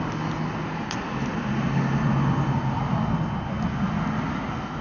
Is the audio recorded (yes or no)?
yes